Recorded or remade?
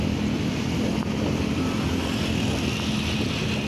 recorded